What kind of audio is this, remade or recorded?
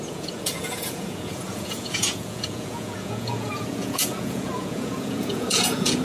remade